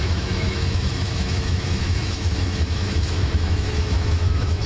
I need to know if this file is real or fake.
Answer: fake